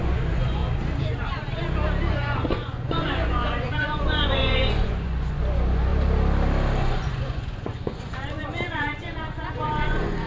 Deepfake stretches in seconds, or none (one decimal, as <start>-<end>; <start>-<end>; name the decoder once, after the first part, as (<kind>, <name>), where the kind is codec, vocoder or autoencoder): 0.0-0.6 (vocoder, Vocos); 2.1-5.9; 6.8-10.3